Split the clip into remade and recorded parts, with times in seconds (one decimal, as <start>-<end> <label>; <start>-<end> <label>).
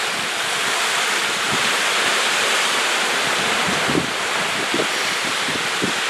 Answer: 0.0-1.2 recorded; 1.2-4.9 remade; 4.9-6.1 recorded